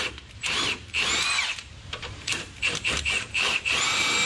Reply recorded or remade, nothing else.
remade